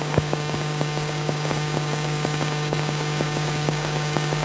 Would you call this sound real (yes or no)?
no